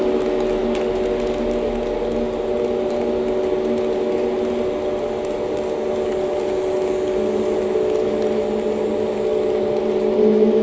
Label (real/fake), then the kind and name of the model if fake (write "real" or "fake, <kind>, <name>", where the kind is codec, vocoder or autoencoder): real